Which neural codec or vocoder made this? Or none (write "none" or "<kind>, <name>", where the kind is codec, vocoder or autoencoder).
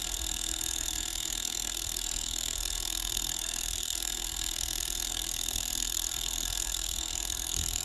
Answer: codec, SNAC